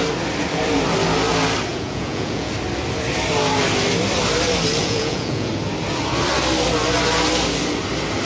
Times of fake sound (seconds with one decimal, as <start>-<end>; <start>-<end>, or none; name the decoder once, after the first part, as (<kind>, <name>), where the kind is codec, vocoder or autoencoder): 1.7-2.5 (vocoder, Vocos); 4.8-5.5